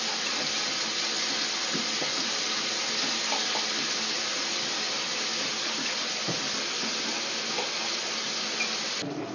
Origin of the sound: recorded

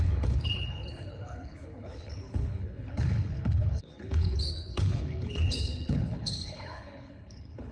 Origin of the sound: remade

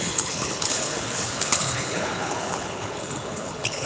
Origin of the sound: remade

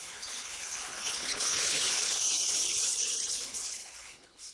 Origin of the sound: remade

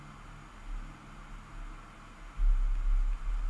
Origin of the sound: recorded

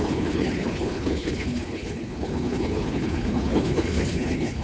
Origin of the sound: remade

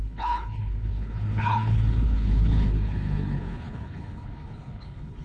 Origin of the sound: remade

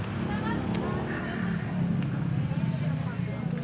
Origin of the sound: recorded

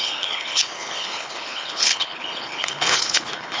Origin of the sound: remade